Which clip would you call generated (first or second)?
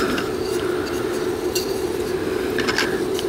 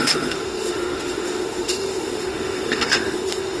second